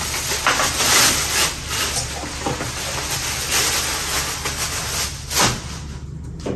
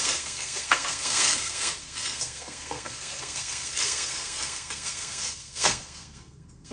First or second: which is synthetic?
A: second